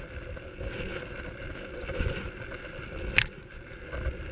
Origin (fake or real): real